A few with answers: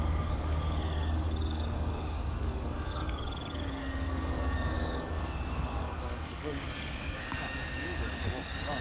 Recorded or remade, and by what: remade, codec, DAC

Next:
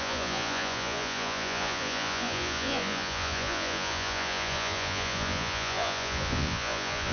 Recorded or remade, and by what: remade, vocoder, Vocos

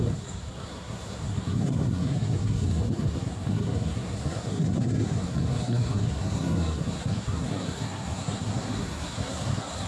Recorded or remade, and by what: remade, codec, SNAC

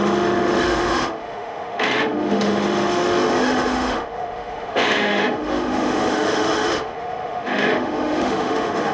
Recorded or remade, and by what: remade, autoencoder, DAC-VAE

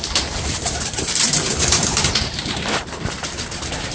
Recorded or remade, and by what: remade, vocoder, BigVGAN v2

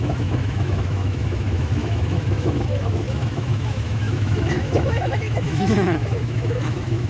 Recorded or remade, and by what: remade, autoencoder, DAC-VAE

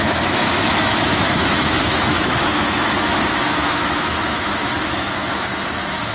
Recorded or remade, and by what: remade, autoencoder, DAC-VAE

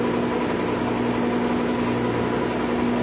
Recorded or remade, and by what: recorded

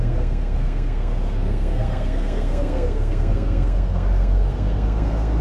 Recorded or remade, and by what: remade, codec, SNAC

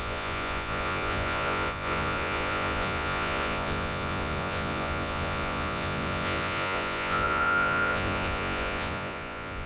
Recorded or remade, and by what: remade, vocoder, Vocos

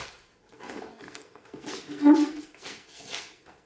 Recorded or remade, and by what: remade, codec, SNAC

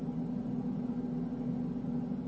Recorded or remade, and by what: recorded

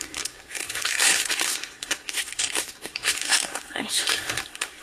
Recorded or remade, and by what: remade, codec, SNAC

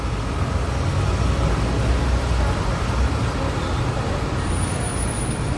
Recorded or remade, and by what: recorded